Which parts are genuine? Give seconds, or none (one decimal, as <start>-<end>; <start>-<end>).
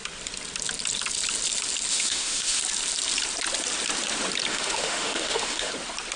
0.0-1.9; 2.6-4.5; 5.7-6.2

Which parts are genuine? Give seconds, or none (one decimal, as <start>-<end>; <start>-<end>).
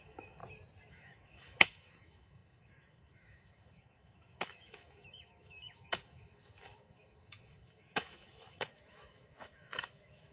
0.4-0.9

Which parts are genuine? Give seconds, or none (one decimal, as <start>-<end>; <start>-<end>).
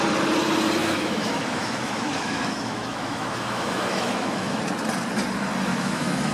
0.0-0.8; 4.6-5.7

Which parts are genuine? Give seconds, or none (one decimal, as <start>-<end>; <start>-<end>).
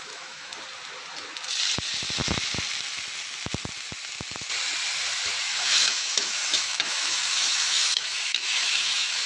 0.5-5.4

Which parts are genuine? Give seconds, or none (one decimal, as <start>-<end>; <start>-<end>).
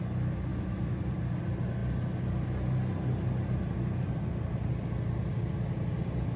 0.0-0.5; 1.0-6.4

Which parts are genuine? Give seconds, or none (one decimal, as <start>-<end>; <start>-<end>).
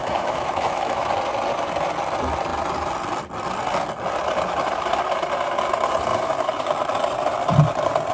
1.1-8.1